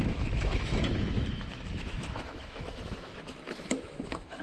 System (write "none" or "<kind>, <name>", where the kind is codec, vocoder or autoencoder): autoencoder, DAC-VAE